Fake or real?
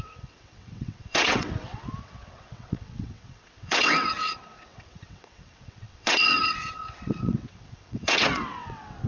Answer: fake